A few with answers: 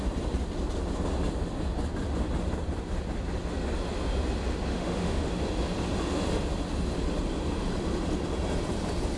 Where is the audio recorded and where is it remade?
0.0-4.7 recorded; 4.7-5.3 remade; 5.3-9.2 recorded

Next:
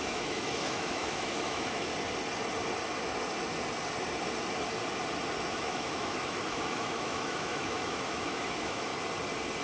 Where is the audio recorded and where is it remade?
0.0-1.9 remade; 1.9-5.5 recorded; 5.5-8.9 remade; 8.9-9.6 recorded

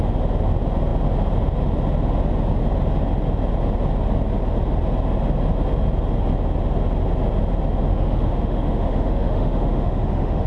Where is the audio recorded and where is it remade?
0.0-7.9 recorded; 7.9-10.5 remade

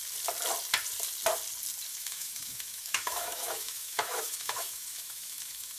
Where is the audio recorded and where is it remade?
0.0-1.9 recorded; 1.9-5.8 remade